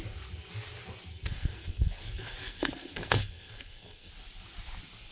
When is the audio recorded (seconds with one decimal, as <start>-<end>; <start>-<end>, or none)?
0.0-1.1; 4.1-5.1